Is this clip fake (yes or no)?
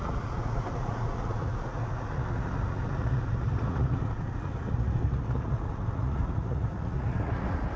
yes